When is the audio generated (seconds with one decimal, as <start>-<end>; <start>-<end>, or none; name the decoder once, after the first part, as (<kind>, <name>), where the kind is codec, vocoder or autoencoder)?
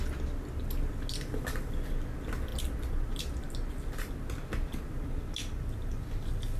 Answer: none